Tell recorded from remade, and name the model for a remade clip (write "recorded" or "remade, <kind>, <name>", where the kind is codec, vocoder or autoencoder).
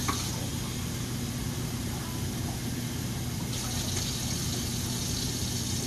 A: recorded